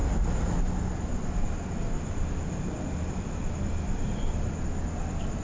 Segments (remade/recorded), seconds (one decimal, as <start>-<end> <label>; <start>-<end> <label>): 0.0-0.6 remade; 0.6-5.4 recorded